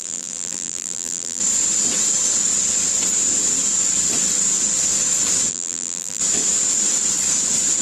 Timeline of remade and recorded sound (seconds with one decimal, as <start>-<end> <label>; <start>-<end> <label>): 0.0-1.4 remade; 1.4-5.5 recorded; 5.5-6.2 remade; 6.2-7.8 recorded